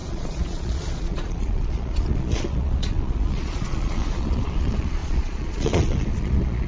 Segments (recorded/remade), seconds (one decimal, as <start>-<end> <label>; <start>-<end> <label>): 0.0-6.7 remade